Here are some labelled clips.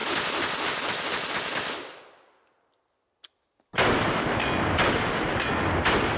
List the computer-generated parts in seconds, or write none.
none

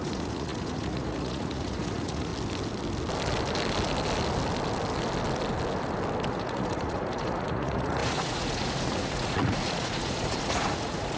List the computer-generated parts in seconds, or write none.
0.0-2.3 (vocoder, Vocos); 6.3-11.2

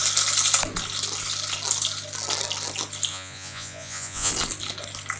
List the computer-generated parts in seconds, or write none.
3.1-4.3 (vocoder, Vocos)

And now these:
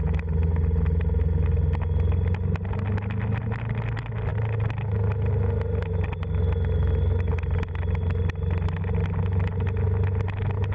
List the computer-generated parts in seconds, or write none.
none

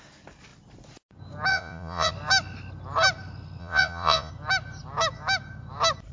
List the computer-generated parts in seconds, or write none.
1.5-2.1 (vocoder, Vocos); 3.6-4.3

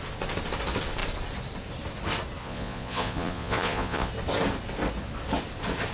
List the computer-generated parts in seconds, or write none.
2.4-4.1 (vocoder, Vocos)

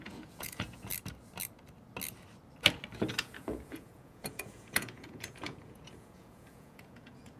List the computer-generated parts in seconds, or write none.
0.0-0.9 (vocoder, Vocos); 3.2-7.4